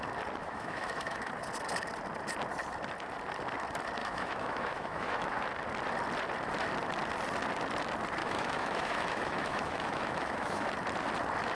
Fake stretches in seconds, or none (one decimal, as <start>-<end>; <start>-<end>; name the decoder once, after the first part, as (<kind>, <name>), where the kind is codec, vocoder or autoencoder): 0.4-1.3 (autoencoder, DAC-VAE); 4.0-5.4; 8.2-10.7